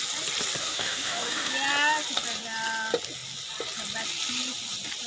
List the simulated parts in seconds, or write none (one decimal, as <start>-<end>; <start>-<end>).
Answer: 0.6-1.5